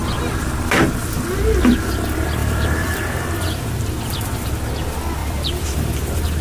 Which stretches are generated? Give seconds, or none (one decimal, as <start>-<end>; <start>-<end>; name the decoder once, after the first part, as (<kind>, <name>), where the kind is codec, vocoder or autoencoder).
2.4-4.5 (vocoder, BigVGAN v2); 5.2-5.9